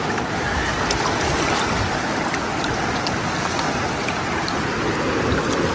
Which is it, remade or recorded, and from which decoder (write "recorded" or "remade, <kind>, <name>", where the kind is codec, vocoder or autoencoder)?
recorded